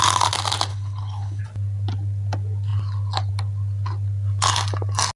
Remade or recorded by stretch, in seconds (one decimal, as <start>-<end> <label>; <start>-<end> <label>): 0.0-0.7 recorded; 0.7-1.4 remade; 1.4-5.2 recorded